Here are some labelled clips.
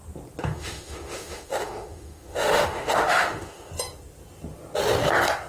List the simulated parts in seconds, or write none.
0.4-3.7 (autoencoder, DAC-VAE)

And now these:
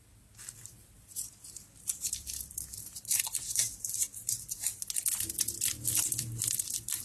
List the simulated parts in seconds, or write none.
0.0-4.6 (vocoder, BigVGAN v2); 5.8-7.0

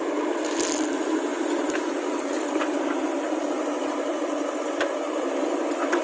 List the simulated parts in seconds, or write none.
1.3-4.7 (vocoder, BigVGAN v2)